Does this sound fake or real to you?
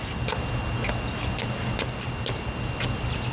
real